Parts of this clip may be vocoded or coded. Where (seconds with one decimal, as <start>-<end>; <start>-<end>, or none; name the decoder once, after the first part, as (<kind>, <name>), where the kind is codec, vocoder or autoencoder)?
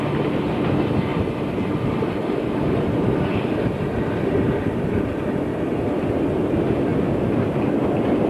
1.1-5.2 (vocoder, BigVGAN v2)